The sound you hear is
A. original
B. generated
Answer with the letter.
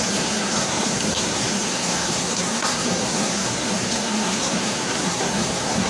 B